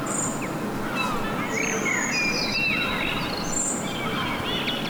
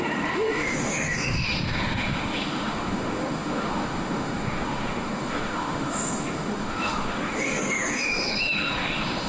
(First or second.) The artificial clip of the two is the second